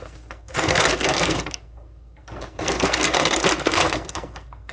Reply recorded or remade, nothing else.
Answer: remade